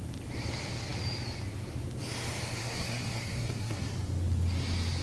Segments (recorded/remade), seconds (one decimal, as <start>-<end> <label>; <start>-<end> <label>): 0.0-2.6 recorded; 2.6-3.9 remade; 3.9-5.0 recorded